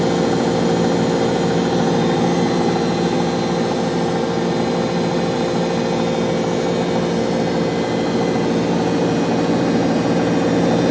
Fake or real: real